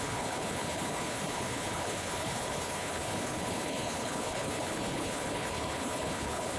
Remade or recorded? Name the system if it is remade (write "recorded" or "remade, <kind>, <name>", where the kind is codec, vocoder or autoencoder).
remade, codec, HILCodec